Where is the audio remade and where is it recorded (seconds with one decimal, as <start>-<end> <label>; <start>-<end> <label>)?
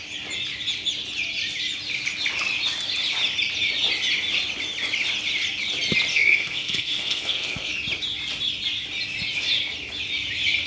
0.0-6.1 recorded; 6.1-7.7 remade; 7.7-10.7 recorded